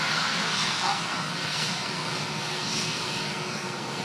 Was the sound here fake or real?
fake